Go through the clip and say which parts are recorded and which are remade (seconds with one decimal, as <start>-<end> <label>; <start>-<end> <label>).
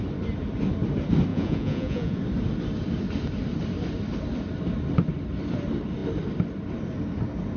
0.0-1.3 recorded; 1.3-2.2 remade; 2.2-7.6 recorded